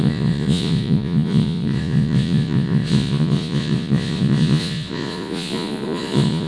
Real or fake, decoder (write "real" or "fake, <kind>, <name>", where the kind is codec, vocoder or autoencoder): fake, vocoder, Vocos